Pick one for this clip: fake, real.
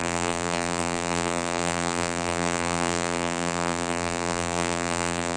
fake